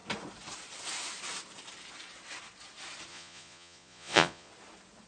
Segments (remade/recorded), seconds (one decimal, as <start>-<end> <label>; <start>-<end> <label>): 0.0-3.1 recorded; 3.1-4.5 remade; 4.5-5.1 recorded